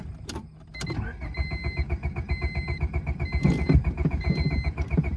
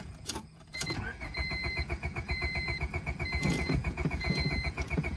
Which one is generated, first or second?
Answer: second